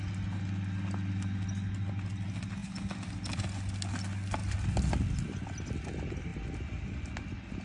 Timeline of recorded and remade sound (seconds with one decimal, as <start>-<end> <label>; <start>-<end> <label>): 0.0-7.6 recorded